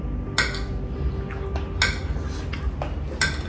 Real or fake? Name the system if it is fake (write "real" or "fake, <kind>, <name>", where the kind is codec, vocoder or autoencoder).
real